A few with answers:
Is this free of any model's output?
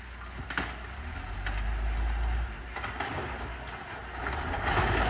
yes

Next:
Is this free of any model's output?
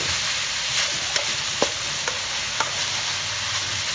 yes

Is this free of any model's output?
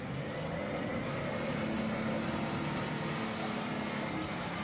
yes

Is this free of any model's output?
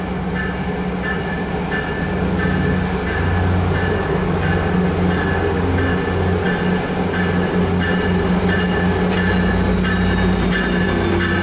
yes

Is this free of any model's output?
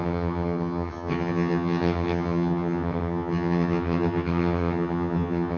no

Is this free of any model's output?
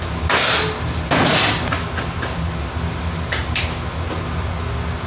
yes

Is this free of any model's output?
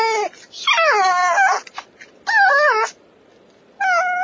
yes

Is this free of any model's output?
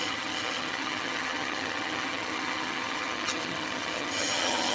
no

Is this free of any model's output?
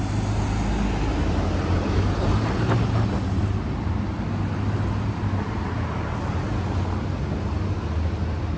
yes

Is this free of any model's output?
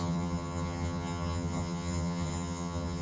no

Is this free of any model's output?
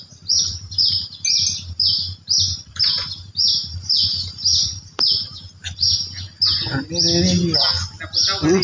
yes